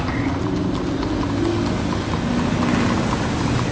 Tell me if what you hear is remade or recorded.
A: recorded